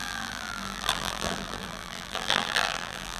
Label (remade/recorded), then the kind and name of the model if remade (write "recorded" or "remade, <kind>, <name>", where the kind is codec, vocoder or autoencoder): remade, vocoder, BigVGAN v2